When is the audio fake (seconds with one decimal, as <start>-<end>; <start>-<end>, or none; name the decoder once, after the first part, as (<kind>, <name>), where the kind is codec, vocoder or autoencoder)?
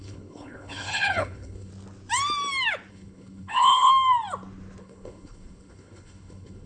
0.0-1.7 (codec, HILCodec); 2.9-3.9; 4.8-6.7